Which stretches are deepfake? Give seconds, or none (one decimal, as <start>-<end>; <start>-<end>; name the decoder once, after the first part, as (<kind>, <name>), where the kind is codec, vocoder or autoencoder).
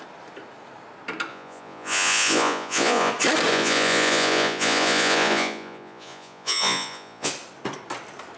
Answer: 1.3-3.1 (vocoder, Vocos); 3.5-7.3